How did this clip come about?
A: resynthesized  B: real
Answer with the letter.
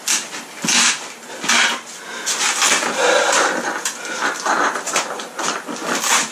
B